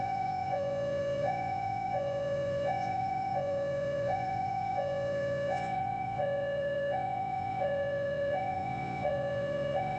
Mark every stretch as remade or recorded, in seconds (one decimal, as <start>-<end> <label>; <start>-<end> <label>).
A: 0.0-10.0 remade

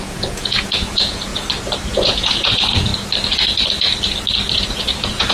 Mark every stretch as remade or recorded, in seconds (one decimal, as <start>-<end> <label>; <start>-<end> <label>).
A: 0.0-1.3 remade; 1.3-1.9 recorded; 1.9-2.9 remade; 2.9-4.5 recorded; 4.5-5.3 remade